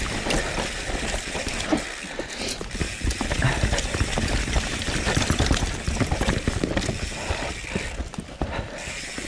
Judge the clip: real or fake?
fake